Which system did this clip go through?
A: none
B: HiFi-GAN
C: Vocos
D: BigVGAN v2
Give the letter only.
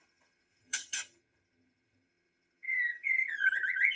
B